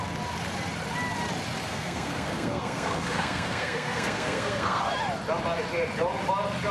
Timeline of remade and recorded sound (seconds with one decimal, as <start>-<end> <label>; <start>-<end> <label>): 0.0-1.6 recorded; 1.6-4.8 remade; 4.8-6.7 recorded